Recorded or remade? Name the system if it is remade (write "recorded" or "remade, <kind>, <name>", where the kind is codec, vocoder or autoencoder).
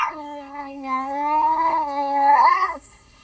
remade, codec, SNAC